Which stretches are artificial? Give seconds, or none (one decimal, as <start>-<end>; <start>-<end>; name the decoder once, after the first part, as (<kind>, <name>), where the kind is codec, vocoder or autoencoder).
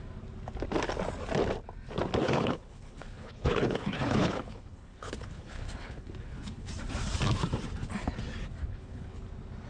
2.2-6.7 (codec, HILCodec); 8.6-9.2